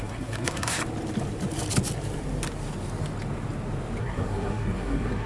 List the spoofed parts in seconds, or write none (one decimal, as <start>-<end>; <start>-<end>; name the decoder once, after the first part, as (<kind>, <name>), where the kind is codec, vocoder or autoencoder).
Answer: 0.0-0.8 (codec, SNAC); 4.0-5.3